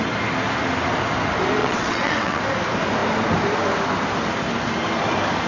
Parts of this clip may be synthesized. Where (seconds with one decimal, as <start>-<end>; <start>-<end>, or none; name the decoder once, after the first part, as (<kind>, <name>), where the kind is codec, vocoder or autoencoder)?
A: 1.6-2.4 (vocoder, WaveNeXt)